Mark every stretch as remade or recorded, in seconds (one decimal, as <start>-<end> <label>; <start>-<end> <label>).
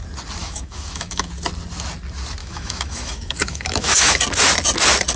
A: 0.0-0.4 recorded; 0.4-1.3 remade; 1.3-2.4 recorded; 2.4-4.2 remade; 4.2-5.2 recorded